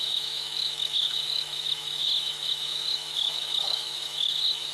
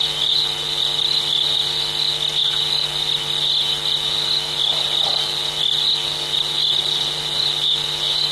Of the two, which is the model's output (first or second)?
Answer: first